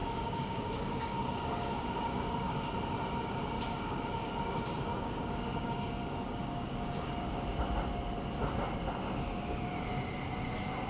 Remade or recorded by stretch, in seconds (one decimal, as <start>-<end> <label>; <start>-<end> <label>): 0.0-2.7 remade; 2.7-3.7 recorded; 3.7-7.3 remade; 7.3-10.9 recorded

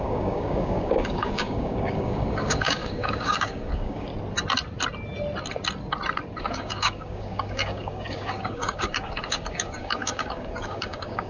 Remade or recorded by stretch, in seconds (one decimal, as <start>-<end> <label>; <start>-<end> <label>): 0.0-4.1 remade; 4.1-6.4 recorded; 6.4-11.3 remade

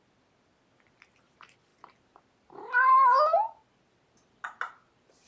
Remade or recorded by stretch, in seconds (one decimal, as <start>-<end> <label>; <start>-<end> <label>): 0.0-5.3 recorded

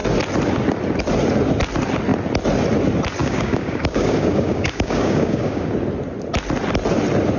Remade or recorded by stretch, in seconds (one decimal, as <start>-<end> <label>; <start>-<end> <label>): 0.0-3.2 recorded; 3.2-5.7 remade; 5.7-7.4 recorded

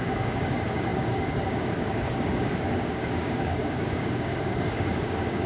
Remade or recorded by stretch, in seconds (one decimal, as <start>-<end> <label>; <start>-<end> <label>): 0.0-5.5 remade

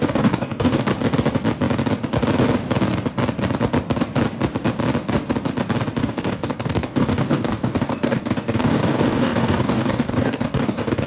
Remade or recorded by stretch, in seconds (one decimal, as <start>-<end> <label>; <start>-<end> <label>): 0.0-0.9 remade; 0.9-6.0 recorded; 6.0-11.1 remade